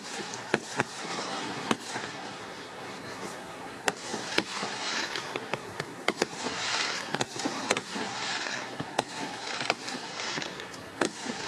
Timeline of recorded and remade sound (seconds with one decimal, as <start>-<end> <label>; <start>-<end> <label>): 0.0-11.5 remade